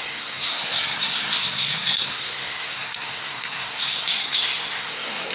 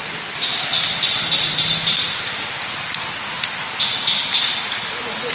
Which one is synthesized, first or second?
first